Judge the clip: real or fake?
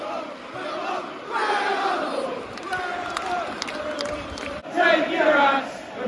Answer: real